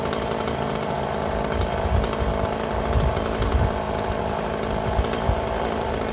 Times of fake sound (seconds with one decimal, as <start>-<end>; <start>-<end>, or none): none